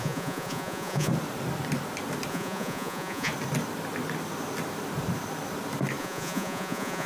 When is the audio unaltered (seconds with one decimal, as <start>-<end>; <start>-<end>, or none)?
1.1-2.3; 3.3-6.0